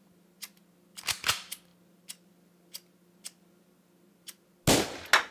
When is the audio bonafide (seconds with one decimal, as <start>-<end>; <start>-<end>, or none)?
0.0-5.3